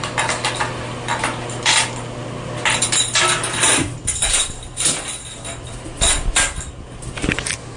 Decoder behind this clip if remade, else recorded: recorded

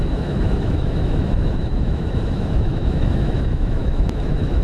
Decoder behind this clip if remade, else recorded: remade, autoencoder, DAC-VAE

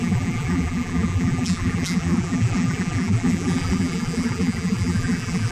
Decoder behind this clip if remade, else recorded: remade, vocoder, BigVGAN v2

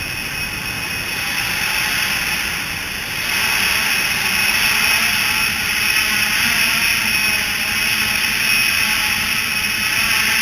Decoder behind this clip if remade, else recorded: recorded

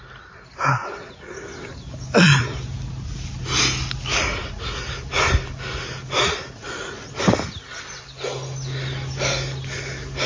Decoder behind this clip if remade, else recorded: recorded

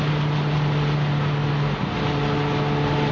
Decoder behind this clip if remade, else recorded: recorded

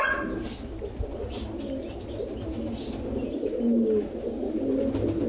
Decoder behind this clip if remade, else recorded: recorded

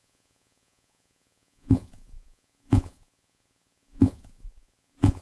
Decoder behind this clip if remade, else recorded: remade, vocoder, Vocos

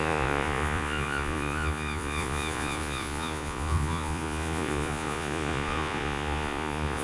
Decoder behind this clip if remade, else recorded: remade, vocoder, Vocos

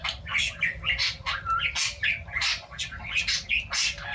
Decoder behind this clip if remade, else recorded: recorded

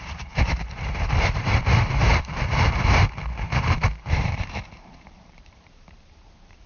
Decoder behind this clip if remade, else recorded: remade, vocoder, BigVGAN v2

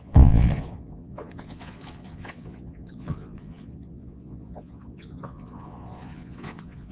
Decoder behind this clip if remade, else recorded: remade, vocoder, Vocos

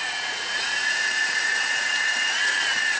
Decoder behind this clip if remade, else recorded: remade, vocoder, Vocos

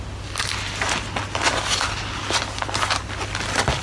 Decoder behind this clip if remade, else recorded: recorded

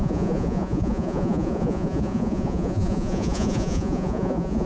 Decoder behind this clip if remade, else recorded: remade, vocoder, Vocos